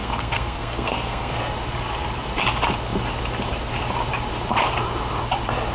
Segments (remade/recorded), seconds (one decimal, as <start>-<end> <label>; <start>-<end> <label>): 0.0-1.4 remade; 1.4-5.7 recorded